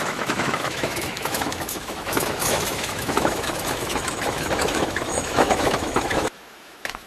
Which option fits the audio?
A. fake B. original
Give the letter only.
A